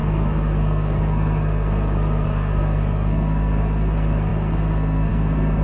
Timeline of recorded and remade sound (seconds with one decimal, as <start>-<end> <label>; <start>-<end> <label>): 0.0-5.6 remade